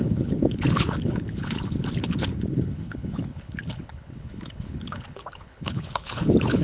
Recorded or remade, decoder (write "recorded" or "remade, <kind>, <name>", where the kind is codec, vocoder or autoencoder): remade, codec, HILCodec